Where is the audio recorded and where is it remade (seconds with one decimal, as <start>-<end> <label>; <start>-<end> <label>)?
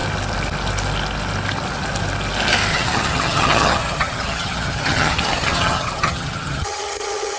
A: 0.0-2.7 recorded; 2.7-7.4 remade